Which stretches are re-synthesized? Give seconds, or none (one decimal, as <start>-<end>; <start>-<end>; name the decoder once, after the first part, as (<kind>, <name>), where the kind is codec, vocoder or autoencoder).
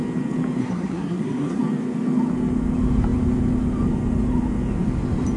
0.6-1.6 (codec, SNAC)